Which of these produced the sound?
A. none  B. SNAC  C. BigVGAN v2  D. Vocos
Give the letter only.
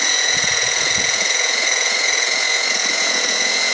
D